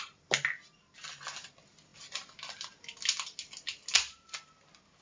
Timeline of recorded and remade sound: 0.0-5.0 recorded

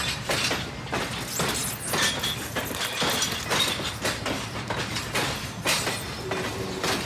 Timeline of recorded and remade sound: 0.0-7.1 recorded